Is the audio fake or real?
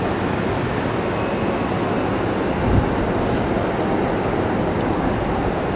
real